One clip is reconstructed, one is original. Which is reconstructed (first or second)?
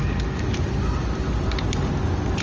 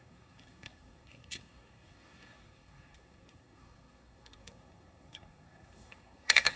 second